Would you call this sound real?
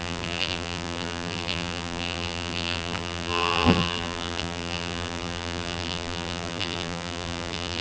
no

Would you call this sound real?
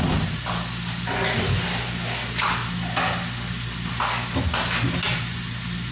yes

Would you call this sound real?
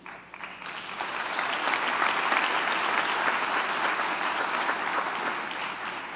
yes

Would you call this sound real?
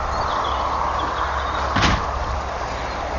yes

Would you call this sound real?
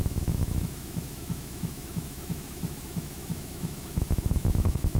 no